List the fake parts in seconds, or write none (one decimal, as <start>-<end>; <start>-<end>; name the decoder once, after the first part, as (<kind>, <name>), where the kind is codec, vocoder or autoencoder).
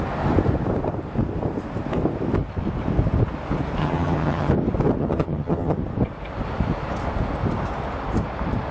3.8-4.5 (vocoder, HiFi-GAN); 5.0-5.8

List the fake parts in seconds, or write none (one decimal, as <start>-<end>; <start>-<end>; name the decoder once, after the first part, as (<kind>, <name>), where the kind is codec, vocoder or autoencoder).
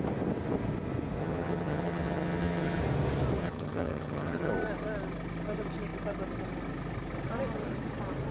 1.2-2.8 (vocoder, HiFi-GAN); 3.4-4.5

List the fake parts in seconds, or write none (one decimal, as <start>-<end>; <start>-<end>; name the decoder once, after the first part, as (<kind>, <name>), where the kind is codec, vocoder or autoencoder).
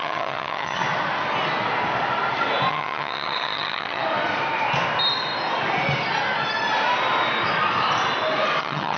0.0-0.8 (vocoder, HiFi-GAN); 2.7-4.0; 8.6-9.0